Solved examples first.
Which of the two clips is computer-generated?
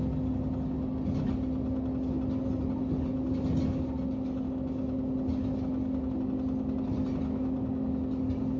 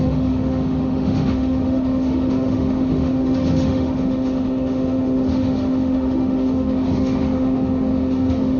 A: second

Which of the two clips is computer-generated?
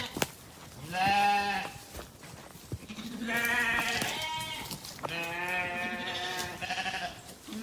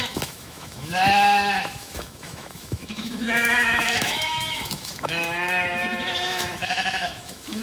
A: second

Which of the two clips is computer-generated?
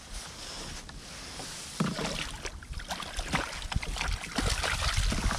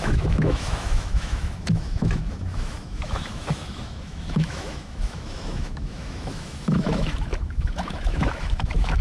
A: second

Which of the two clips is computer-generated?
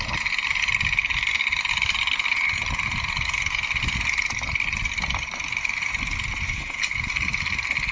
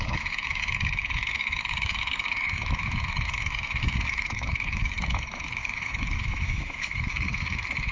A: second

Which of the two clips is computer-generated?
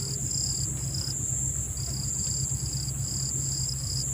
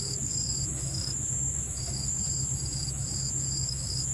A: second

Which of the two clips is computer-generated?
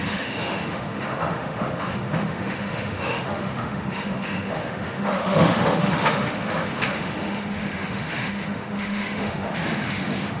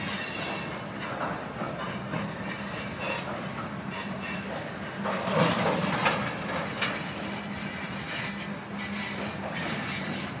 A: first